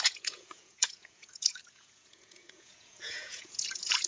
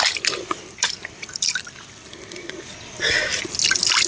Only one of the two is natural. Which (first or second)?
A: second